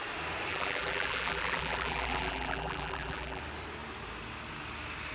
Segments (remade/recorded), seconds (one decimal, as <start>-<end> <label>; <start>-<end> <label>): 0.0-0.5 recorded; 0.5-3.4 remade; 3.4-5.1 recorded

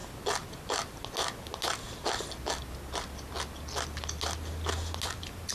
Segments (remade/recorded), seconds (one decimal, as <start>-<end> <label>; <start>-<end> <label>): 0.0-5.5 recorded

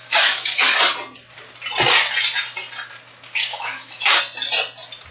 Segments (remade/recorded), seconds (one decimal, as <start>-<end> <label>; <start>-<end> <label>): 0.0-0.8 remade; 0.8-3.5 recorded; 3.5-4.2 remade; 4.2-5.1 recorded

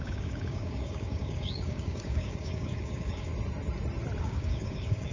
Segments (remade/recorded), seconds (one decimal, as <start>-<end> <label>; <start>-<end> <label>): 0.0-3.3 remade; 3.3-4.2 recorded; 4.2-5.1 remade

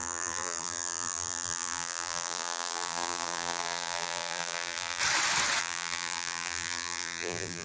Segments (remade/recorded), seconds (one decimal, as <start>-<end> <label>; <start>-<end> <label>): 0.0-5.0 remade; 5.0-5.6 recorded; 5.6-7.6 remade

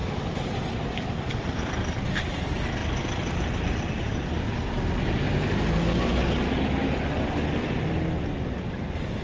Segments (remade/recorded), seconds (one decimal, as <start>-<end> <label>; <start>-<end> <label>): 0.0-9.2 recorded